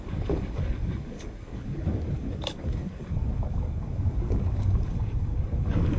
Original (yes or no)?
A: no